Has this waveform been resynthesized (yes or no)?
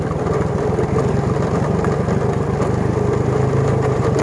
no